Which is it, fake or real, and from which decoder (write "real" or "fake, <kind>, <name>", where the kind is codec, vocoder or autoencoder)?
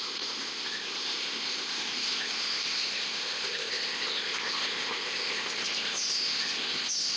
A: fake, codec, ZipCodec